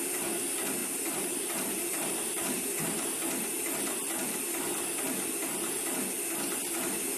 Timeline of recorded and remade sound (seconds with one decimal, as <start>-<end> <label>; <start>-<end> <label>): 0.0-0.8 recorded; 0.8-2.6 remade; 2.6-7.2 recorded